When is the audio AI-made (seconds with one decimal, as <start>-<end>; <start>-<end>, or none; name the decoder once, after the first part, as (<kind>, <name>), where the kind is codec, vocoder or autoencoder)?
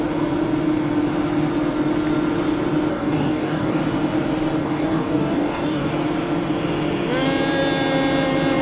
2.9-3.8 (codec, DAC); 4.6-5.9